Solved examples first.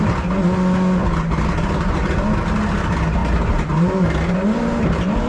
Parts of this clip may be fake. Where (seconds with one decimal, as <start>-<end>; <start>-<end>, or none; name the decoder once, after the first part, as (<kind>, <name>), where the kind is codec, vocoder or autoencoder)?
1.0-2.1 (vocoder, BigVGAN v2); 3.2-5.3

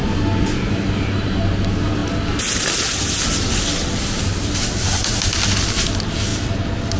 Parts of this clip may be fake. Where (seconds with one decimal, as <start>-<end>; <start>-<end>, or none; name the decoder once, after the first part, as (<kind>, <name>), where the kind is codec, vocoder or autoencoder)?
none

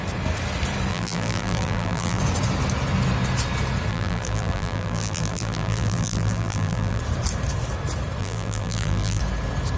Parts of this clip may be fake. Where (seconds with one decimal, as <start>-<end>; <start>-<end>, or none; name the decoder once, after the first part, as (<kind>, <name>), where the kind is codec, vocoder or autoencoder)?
0.9-2.2 (vocoder, BigVGAN v2); 3.9-7.0; 8.2-9.2